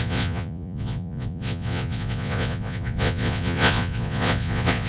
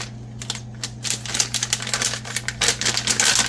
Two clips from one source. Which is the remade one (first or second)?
first